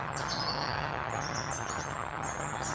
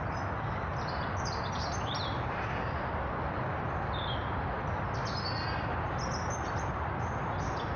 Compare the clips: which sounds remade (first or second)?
first